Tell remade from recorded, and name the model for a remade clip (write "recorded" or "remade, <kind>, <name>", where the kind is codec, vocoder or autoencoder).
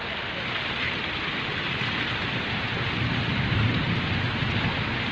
recorded